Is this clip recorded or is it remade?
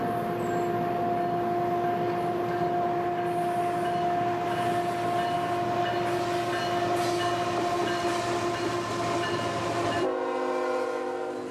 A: recorded